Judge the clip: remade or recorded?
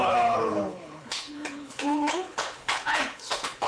remade